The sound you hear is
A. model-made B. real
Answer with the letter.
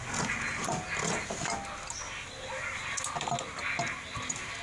B